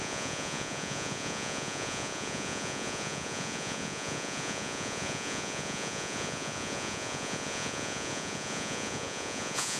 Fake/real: fake